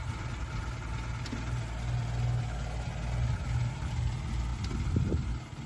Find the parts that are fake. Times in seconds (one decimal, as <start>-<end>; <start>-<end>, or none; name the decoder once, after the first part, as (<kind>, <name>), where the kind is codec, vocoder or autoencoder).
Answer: 4.5-5.3 (vocoder, BigVGAN v2)